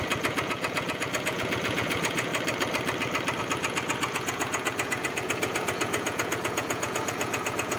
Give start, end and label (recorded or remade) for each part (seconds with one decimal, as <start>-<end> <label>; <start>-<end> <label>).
0.0-2.3 remade; 2.3-3.4 recorded; 3.4-7.8 remade